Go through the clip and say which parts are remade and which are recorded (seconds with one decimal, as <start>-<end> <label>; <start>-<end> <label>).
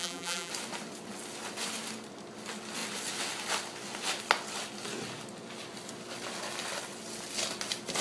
0.0-0.5 remade; 0.5-8.0 recorded